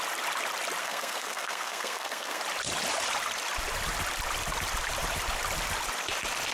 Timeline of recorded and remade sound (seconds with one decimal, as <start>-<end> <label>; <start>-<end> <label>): 0.0-0.8 recorded; 0.8-2.4 remade; 2.4-6.5 recorded